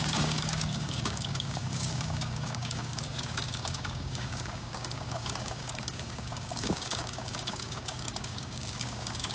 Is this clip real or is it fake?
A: fake